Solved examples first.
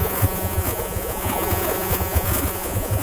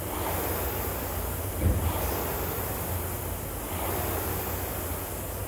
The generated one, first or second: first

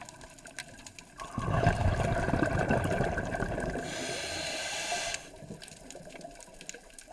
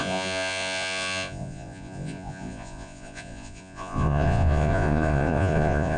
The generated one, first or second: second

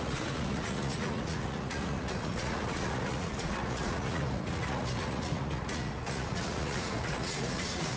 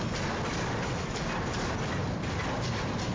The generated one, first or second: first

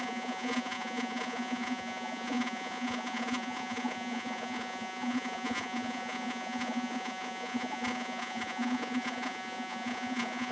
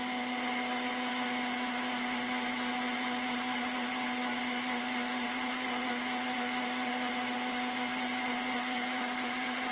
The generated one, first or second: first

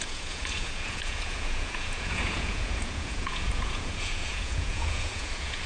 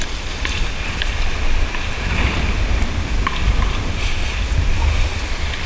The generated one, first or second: first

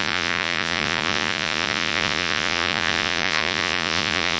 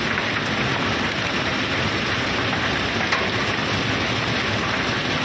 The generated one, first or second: first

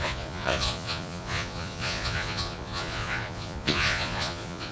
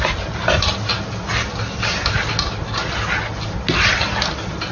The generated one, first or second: first